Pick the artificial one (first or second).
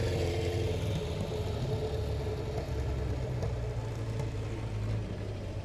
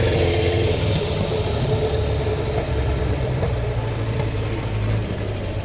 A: second